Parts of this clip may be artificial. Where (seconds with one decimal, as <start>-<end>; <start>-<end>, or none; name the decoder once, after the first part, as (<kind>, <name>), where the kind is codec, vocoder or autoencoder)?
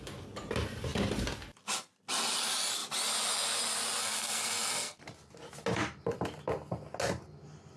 4.0-5.0 (codec, SNAC)